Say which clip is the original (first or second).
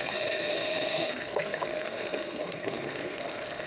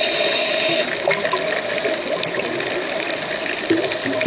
second